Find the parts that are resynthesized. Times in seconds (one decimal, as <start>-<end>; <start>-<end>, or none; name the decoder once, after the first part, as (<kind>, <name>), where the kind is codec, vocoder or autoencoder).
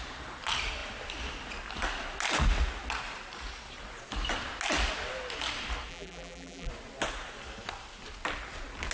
5.9-6.7 (vocoder, BigVGAN v2)